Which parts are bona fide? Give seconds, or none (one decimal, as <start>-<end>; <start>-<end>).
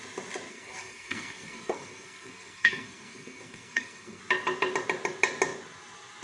0.0-0.5; 4.2-6.2